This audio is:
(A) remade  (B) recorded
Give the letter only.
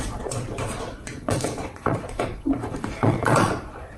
A